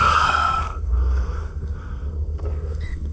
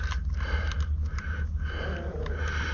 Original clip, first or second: second